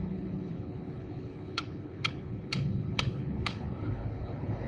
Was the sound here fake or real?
fake